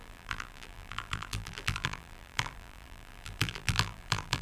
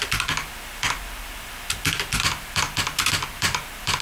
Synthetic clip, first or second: first